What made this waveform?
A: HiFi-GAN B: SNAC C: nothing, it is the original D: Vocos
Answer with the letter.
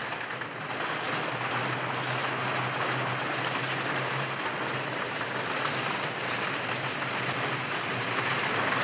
C